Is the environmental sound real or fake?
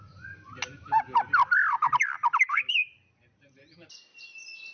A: fake